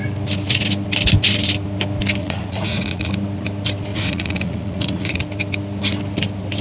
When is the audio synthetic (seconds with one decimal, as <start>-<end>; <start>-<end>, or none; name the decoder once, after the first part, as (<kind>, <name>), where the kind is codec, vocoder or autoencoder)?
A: 2.2-3.1 (vocoder, Vocos); 3.9-5.2

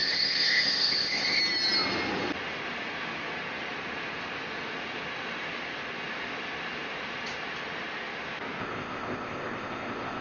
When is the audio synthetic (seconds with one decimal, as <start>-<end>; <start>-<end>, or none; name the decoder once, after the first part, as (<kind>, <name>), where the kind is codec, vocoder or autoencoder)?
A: 0.0-1.4 (codec, ZipCodec); 8.6-10.2

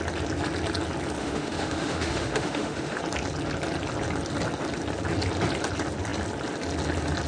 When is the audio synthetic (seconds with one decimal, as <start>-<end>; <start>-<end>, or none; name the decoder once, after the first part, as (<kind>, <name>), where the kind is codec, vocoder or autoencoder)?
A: 1.2-3.0 (autoencoder, DAC-VAE)

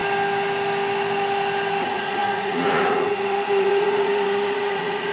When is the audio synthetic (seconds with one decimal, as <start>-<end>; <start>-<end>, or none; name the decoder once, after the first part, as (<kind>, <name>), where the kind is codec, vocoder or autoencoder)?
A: 1.8-5.1 (vocoder, Vocos)